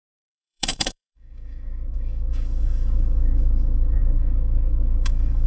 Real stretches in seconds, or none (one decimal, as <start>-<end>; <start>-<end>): none